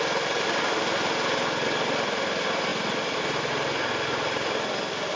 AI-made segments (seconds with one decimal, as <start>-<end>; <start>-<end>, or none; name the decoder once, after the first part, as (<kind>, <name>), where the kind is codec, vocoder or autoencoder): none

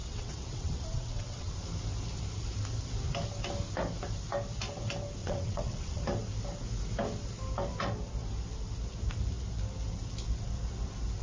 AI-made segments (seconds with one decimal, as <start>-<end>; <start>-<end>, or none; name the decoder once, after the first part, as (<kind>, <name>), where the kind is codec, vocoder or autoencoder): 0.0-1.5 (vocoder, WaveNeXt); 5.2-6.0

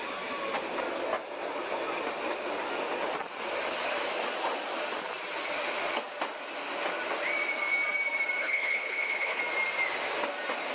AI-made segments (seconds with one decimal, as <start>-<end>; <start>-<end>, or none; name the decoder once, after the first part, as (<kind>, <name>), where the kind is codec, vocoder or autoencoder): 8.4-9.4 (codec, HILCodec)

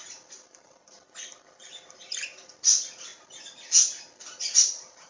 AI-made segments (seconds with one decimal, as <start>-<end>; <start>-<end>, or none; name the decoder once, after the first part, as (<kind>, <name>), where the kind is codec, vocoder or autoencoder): 0.0-3.1 (vocoder, BigVGAN v2); 4.4-5.1

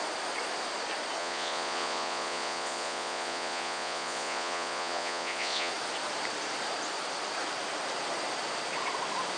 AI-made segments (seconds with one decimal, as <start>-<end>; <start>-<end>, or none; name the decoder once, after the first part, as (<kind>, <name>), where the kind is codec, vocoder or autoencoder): 1.2-5.7 (vocoder, Vocos)

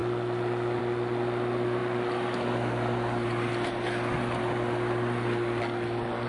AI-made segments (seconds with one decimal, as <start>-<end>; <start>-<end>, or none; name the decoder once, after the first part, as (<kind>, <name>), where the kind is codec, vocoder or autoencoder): none

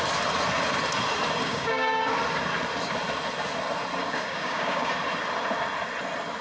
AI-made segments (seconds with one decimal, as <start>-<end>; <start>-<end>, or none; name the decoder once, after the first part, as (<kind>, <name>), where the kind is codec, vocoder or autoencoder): 1.4-2.0 (codec, DAC); 4.0-4.9